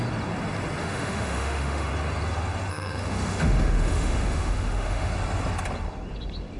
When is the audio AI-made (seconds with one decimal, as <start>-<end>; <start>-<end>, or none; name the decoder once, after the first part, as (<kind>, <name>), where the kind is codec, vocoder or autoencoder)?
0.8-1.9 (autoencoder, DAC-VAE); 2.7-5.1